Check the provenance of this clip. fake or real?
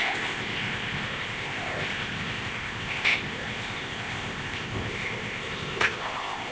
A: fake